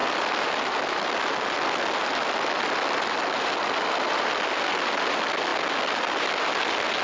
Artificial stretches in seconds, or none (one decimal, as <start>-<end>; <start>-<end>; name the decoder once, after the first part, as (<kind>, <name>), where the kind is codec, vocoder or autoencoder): none